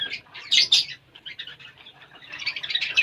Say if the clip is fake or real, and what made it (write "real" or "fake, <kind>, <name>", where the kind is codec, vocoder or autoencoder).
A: fake, vocoder, BigVGAN v2